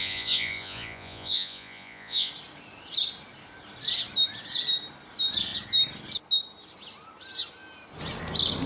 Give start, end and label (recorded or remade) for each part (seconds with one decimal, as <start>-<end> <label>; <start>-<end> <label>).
0.0-2.3 remade; 2.3-8.7 recorded